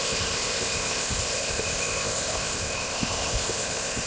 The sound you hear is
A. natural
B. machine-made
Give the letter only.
B